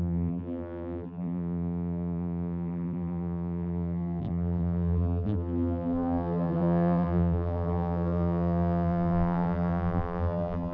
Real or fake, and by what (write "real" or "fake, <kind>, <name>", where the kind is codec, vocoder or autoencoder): fake, vocoder, BigVGAN v2